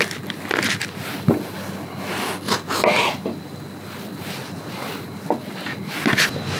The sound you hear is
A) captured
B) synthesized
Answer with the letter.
A